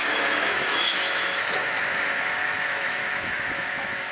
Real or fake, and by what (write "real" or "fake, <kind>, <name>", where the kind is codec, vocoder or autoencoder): fake, autoencoder, DAC-VAE